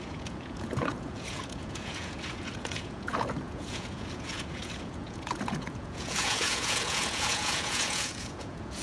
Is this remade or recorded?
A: remade